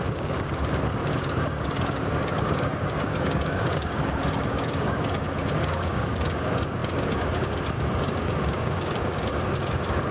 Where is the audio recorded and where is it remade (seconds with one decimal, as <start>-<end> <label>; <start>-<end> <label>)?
0.0-10.1 remade

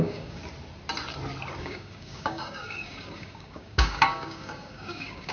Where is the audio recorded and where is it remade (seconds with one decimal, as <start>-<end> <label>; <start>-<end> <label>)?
0.0-0.4 remade; 0.4-1.6 recorded; 1.6-5.3 remade